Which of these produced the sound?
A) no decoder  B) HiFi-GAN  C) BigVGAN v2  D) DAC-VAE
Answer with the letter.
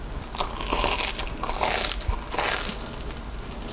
A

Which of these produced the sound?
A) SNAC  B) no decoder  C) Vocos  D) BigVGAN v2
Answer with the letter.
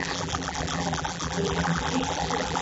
D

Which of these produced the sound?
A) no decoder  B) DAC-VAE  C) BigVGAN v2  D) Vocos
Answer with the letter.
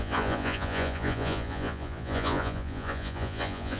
D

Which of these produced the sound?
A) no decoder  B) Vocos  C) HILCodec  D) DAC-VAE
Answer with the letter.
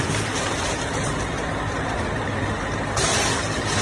A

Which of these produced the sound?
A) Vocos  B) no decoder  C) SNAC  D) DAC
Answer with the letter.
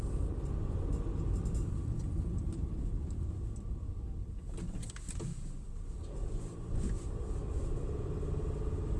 B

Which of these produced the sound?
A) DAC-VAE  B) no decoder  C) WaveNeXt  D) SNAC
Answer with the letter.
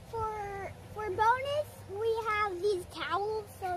B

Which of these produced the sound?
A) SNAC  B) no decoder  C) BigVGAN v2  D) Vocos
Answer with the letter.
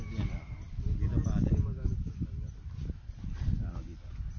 B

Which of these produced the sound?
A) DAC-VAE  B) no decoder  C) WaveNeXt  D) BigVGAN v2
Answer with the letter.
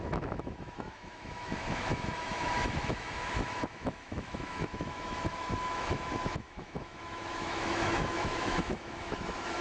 A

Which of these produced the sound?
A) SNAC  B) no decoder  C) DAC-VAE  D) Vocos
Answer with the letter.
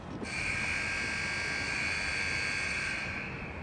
B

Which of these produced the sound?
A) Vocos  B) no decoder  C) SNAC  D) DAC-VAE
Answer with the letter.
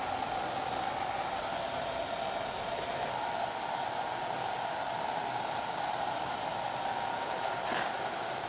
B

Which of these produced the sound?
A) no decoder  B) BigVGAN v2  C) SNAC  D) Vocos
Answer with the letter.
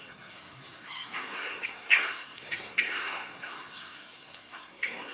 C